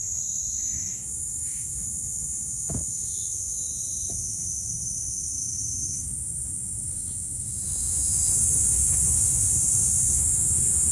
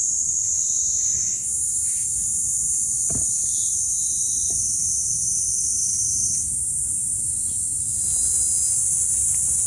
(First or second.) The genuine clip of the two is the second